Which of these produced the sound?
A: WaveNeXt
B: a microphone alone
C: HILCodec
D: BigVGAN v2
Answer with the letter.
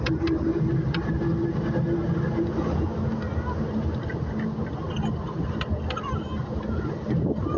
B